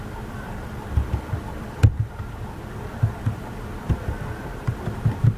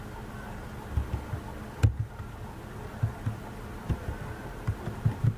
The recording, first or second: second